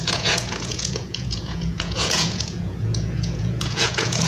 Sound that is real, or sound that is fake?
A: fake